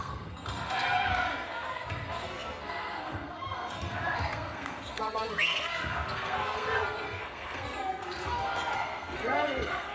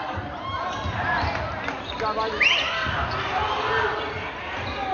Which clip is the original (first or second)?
second